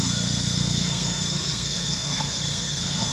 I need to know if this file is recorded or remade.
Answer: remade